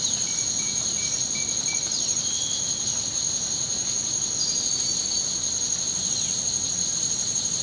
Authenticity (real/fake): real